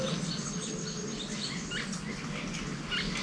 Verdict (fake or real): real